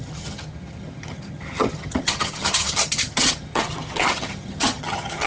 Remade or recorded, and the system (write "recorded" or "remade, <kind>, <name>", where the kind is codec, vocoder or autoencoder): remade, vocoder, HiFi-GAN